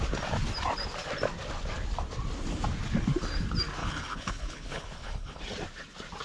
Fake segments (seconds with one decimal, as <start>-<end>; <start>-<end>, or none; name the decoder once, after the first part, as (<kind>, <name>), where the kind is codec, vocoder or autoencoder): 3.8-5.4 (codec, HILCodec)